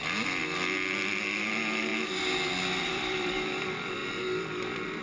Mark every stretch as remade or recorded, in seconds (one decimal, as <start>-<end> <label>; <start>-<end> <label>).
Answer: 0.0-0.4 remade; 0.4-1.4 recorded; 1.4-1.9 remade; 1.9-2.6 recorded; 2.6-5.0 remade